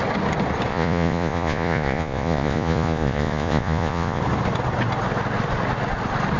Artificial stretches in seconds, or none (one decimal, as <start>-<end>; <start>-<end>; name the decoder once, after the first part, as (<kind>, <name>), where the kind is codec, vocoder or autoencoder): 0.7-4.2 (vocoder, Vocos)